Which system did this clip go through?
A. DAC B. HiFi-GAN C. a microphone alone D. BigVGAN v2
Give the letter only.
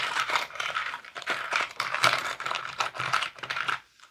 D